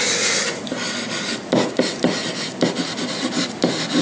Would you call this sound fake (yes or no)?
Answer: no